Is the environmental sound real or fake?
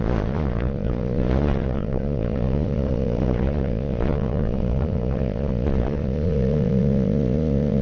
fake